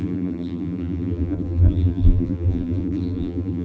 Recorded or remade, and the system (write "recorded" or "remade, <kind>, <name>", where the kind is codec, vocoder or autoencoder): remade, vocoder, BigVGAN v2